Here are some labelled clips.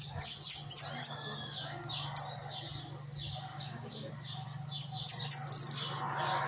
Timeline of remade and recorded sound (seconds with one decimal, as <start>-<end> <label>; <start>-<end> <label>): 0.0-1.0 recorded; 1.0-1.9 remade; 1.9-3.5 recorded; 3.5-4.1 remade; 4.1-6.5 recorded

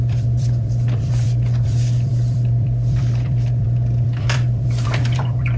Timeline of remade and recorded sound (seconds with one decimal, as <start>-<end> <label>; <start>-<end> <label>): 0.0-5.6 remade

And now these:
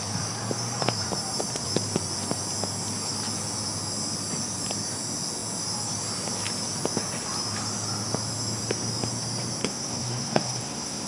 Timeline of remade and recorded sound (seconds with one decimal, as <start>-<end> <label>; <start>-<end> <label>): 0.0-9.6 recorded; 9.6-11.1 remade